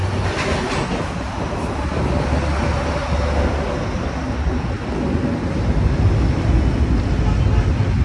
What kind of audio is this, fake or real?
real